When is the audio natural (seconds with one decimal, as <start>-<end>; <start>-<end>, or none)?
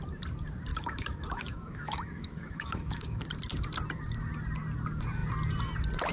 0.0-0.7; 3.3-6.1